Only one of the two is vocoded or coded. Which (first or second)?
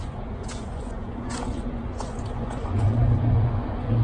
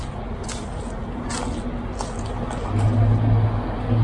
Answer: first